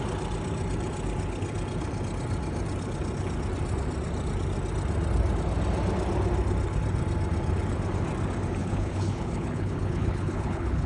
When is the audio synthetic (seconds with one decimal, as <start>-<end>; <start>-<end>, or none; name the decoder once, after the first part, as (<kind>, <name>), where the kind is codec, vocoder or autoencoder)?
8.6-10.9 (codec, HILCodec)